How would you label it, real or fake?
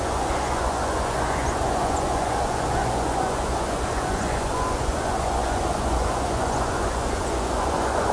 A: fake